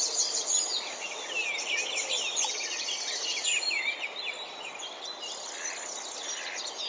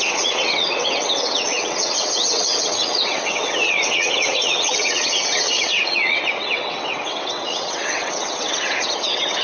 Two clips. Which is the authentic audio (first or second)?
first